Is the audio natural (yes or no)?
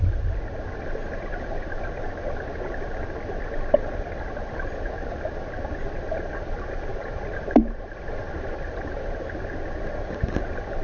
yes